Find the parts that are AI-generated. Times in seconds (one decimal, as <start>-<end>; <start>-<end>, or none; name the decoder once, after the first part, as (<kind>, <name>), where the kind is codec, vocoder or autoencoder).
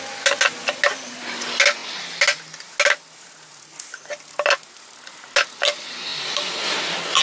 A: none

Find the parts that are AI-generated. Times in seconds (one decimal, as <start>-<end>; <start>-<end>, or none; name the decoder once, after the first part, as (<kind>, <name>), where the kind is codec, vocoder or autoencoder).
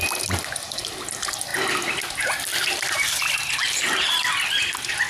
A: none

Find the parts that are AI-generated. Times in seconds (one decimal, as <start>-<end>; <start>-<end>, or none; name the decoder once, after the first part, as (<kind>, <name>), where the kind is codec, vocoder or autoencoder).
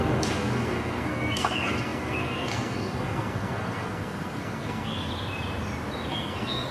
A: 0.0-5.1 (codec, SNAC); 6.1-6.7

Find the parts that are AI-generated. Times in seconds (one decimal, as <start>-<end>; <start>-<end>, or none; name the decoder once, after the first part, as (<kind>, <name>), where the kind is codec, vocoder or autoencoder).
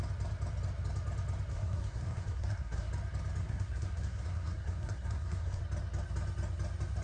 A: 1.5-2.9 (codec, SNAC); 3.4-5.6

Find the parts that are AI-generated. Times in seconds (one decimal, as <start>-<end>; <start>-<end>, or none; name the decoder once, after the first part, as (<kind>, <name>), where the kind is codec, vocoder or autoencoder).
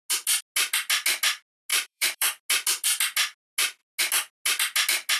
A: 1.7-2.4 (vocoder, BigVGAN v2)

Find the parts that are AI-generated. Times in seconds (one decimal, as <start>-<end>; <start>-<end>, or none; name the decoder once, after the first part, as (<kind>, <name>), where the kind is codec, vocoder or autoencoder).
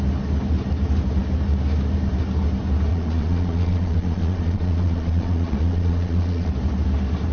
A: 2.9-6.5 (vocoder, Vocos)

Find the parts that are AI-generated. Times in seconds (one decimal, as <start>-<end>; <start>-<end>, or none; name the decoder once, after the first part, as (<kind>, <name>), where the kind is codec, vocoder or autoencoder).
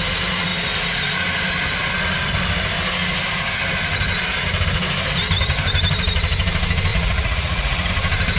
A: 6.9-7.9 (vocoder, Vocos)